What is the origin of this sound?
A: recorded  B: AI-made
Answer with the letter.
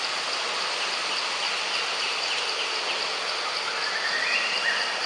A